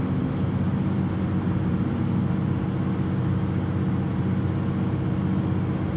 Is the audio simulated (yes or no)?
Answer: no